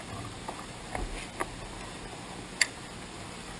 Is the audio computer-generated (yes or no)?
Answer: no